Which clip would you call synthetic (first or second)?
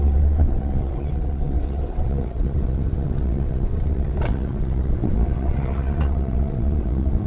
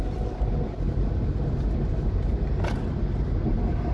first